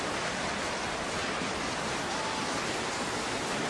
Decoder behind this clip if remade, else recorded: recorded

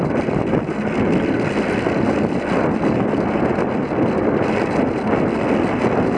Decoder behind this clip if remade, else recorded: recorded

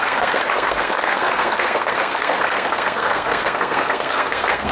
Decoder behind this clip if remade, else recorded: remade, codec, SNAC